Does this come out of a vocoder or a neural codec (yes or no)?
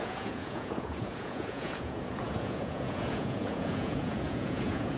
yes